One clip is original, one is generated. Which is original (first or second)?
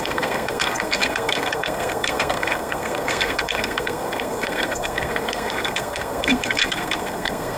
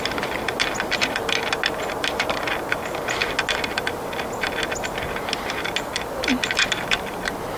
second